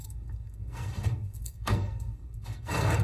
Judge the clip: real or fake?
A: fake